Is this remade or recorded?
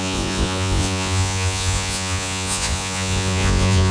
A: remade